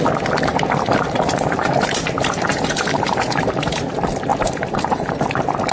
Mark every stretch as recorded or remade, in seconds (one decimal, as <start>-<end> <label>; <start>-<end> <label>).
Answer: 0.0-0.5 recorded; 0.5-3.9 remade; 3.9-4.3 recorded; 4.3-5.1 remade; 5.1-5.7 recorded